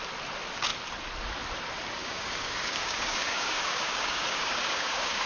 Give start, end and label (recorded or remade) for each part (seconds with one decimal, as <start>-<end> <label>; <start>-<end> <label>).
0.0-2.0 recorded; 2.0-5.3 remade